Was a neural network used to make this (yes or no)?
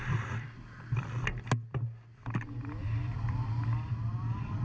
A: no